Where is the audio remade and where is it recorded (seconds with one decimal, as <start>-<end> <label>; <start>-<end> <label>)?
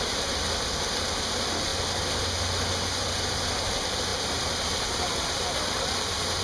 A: 0.0-6.4 recorded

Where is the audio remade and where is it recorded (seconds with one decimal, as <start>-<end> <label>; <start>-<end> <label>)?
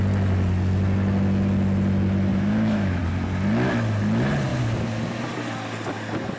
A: 0.0-2.3 recorded; 2.3-3.0 remade; 3.0-6.4 recorded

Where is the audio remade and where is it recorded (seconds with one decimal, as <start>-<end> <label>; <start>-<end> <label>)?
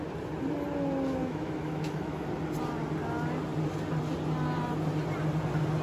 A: 0.0-1.2 recorded; 1.2-2.3 remade; 2.3-5.8 recorded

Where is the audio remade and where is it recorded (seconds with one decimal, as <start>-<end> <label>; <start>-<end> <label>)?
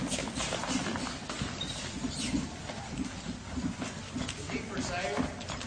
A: 0.0-5.7 recorded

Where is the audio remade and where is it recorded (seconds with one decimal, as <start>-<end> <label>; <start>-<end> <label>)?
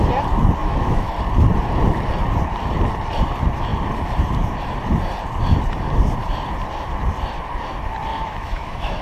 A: 0.0-0.6 recorded; 0.6-1.1 remade; 1.1-8.1 recorded; 8.1-9.0 remade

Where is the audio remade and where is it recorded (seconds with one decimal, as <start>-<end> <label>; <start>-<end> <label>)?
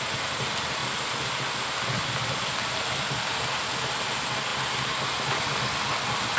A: 0.0-6.4 recorded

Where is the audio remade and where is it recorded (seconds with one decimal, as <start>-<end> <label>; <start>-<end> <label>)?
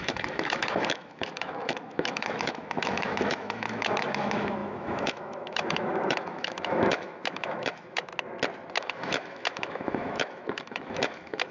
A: 0.0-8.1 remade; 8.1-8.8 recorded; 8.8-11.5 remade